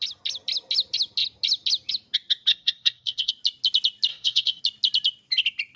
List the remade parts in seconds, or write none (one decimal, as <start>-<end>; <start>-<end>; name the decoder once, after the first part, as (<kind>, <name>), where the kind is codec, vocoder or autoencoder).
2.5-3.3 (codec, SNAC); 4.1-4.6